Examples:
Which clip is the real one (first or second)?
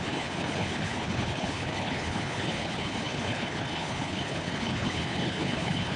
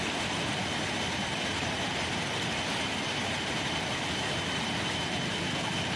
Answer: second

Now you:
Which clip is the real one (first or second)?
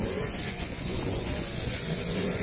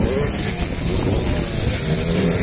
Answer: second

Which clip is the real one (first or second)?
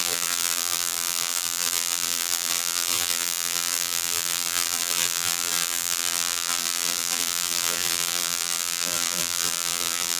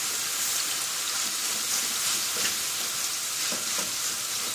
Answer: second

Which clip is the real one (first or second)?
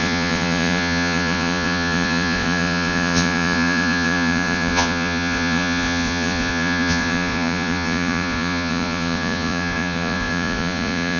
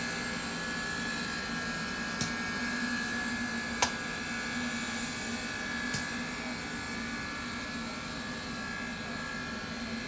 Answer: second